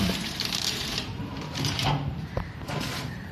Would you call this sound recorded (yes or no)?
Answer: no